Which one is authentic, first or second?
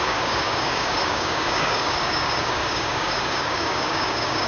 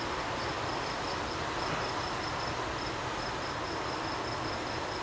second